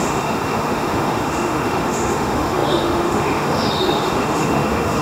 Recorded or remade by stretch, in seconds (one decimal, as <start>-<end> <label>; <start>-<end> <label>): 0.0-5.0 remade